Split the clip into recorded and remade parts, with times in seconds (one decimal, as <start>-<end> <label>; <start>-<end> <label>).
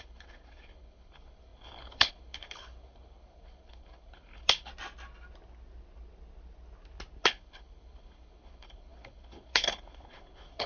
0.0-4.7 remade; 4.7-7.2 recorded; 7.2-10.7 remade